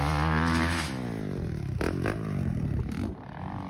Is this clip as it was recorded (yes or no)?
yes